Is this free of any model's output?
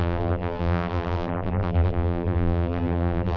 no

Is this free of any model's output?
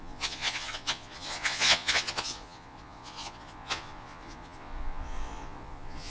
no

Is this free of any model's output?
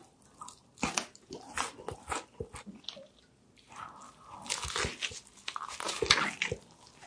yes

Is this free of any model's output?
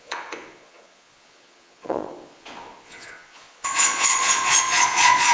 no